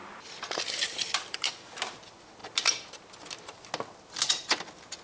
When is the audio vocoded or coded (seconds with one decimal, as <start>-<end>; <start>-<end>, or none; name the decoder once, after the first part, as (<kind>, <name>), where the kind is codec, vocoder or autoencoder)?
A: 0.0-1.5 (vocoder, BigVGAN v2)